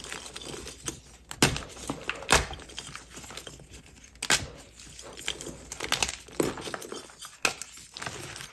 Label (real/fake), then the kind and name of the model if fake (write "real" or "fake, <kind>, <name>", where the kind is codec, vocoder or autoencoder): real